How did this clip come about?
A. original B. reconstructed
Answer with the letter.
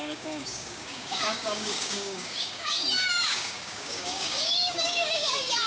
B